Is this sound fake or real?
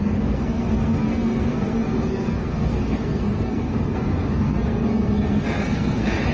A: fake